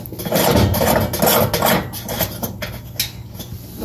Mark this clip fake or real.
real